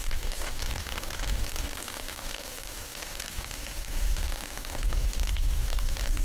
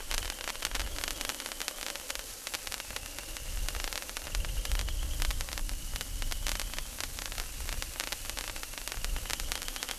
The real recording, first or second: second